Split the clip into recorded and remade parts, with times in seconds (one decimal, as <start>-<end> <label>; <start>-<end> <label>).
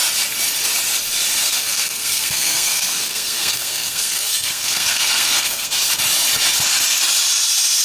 0.0-1.4 recorded; 1.4-5.7 remade; 5.7-7.8 recorded